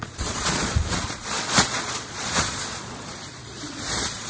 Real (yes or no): no